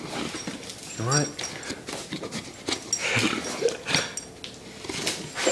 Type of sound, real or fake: real